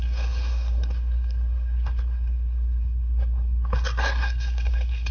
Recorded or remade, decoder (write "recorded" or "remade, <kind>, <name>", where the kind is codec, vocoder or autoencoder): remade, codec, SNAC